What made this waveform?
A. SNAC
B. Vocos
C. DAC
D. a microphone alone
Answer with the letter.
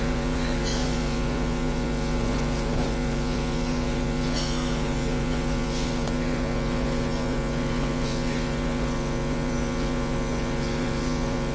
B